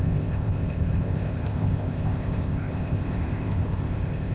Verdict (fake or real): fake